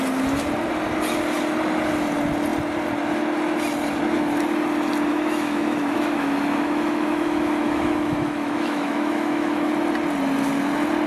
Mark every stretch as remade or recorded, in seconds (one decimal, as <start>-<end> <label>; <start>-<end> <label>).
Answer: 0.0-5.1 recorded; 5.1-9.7 remade; 9.7-11.1 recorded